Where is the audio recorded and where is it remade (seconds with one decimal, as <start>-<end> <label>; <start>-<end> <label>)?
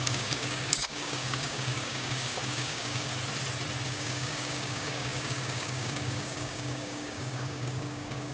0.0-3.1 remade; 3.1-3.9 recorded; 3.9-8.3 remade